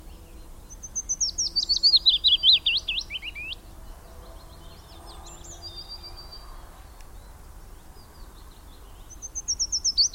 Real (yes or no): yes